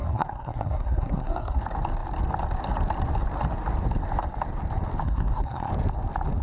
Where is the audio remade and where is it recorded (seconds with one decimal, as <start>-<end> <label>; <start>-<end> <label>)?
0.0-1.6 remade; 1.6-5.0 recorded; 5.0-5.7 remade; 5.7-6.4 recorded